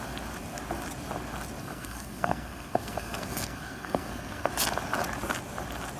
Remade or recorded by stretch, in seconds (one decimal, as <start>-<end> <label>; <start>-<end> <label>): 0.0-1.6 recorded; 1.6-4.5 remade; 4.5-6.0 recorded